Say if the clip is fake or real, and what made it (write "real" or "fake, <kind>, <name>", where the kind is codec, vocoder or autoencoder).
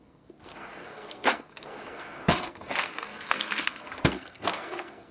fake, codec, SNAC